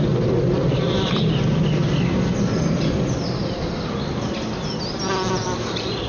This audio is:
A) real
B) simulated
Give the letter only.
A